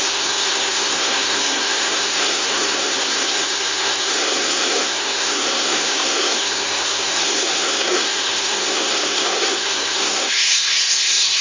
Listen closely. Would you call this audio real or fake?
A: fake